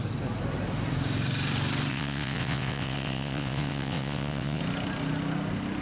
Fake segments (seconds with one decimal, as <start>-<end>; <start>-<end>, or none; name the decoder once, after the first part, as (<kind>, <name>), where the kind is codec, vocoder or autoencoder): 1.9-4.6 (vocoder, WaveNeXt)